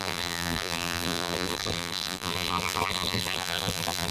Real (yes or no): no